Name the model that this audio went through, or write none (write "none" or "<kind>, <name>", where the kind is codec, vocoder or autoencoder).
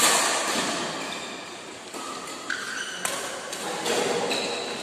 none